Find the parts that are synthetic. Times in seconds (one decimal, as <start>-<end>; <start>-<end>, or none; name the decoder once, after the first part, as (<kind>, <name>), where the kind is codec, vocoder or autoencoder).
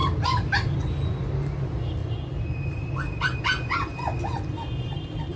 none